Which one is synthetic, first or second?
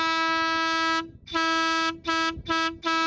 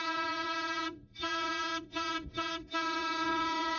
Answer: second